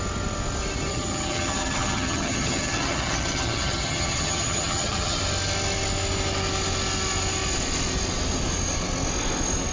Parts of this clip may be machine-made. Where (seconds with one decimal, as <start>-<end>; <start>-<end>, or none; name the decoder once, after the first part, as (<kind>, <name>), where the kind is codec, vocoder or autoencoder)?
0.9-5.2 (vocoder, HiFi-GAN)